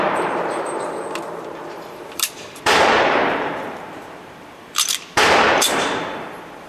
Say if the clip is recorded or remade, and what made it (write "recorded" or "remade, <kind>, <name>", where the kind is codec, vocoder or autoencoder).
remade, vocoder, BigVGAN v2